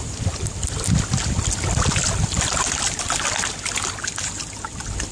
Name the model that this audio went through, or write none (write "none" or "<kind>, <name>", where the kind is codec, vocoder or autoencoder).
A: none